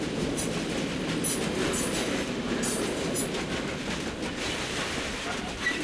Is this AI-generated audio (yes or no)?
no